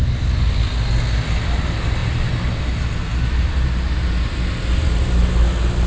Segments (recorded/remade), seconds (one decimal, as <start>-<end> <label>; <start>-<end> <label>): 0.0-3.1 recorded; 3.1-4.7 remade; 4.7-5.9 recorded